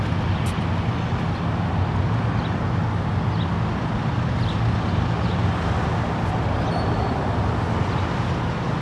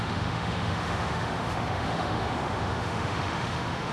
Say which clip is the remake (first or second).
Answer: second